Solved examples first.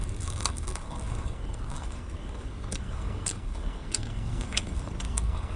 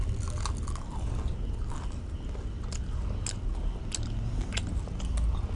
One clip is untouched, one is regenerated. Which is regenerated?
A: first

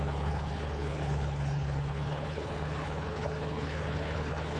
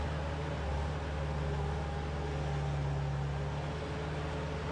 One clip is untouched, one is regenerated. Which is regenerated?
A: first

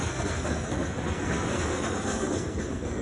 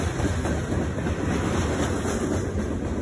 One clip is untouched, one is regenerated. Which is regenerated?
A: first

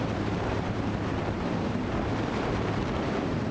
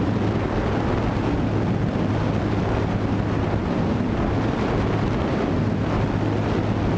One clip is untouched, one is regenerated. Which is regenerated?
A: first